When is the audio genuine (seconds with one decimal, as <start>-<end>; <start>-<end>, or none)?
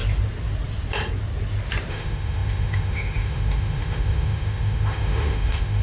0.0-1.9